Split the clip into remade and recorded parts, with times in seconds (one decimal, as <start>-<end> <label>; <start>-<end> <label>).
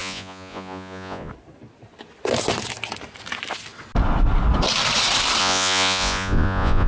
0.0-1.3 remade; 1.3-5.4 recorded; 5.4-6.9 remade